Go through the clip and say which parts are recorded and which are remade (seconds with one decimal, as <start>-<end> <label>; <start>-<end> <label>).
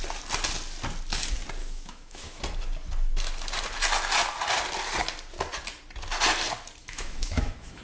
0.0-1.6 recorded; 1.6-2.4 remade; 2.4-6.8 recorded; 6.8-7.8 remade